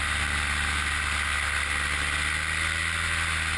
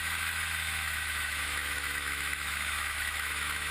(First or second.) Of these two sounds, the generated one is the second